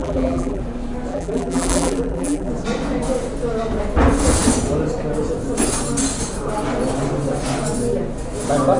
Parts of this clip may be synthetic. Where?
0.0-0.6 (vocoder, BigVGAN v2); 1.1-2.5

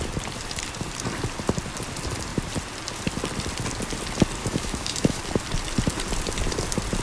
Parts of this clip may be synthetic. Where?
4.4-5.2 (autoencoder, DAC-VAE)

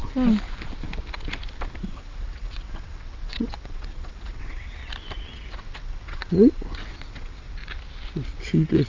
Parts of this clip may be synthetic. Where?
1.8-4.8 (vocoder, WaveNeXt); 5.5-7.6; 8.3-8.9

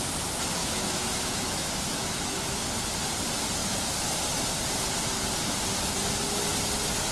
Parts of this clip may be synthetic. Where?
0.6-2.7 (autoencoder, DAC-VAE)

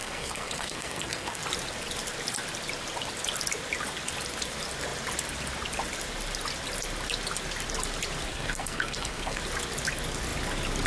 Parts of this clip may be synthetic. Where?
0.0-1.4 (codec, SNAC); 8.3-9.4

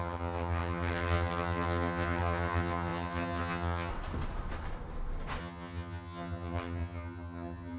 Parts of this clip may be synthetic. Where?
0.0-3.9 (vocoder, HiFi-GAN); 5.4-7.8

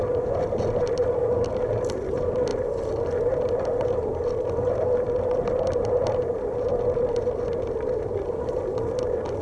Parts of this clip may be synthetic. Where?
none